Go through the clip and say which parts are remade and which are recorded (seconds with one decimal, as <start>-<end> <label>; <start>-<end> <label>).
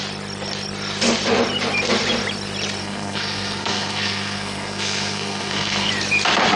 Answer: 0.0-2.8 recorded; 2.8-5.9 remade; 5.9-6.6 recorded